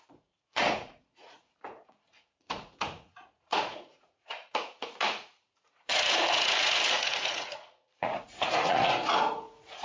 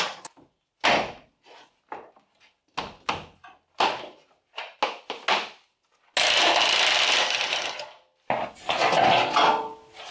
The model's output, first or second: first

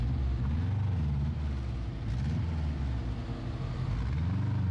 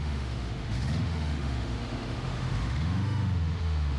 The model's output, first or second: second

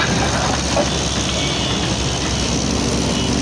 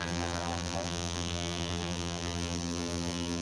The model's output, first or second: second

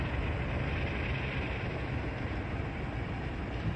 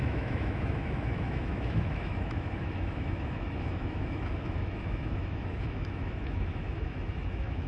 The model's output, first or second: second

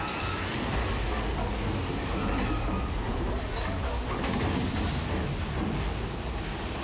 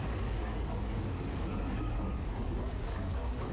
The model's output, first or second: second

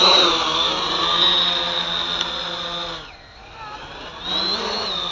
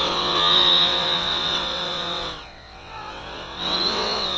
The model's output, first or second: second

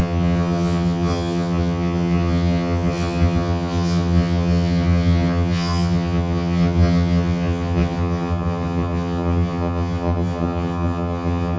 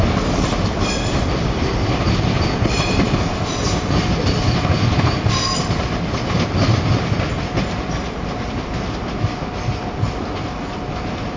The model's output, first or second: first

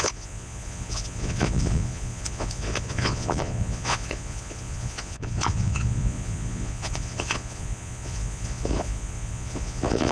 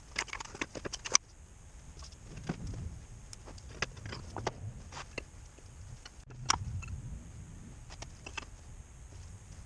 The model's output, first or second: first